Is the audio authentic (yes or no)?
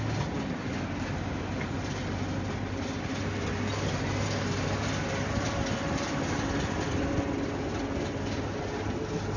yes